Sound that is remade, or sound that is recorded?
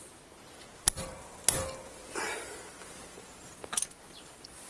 recorded